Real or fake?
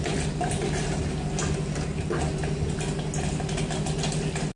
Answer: real